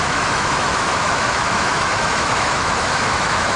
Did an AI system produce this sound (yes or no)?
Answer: yes